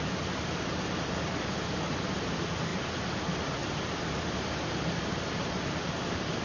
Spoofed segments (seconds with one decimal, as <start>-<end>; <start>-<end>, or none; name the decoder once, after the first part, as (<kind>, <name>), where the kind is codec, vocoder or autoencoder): none